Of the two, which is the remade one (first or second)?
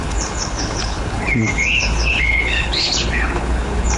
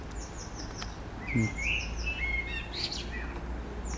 first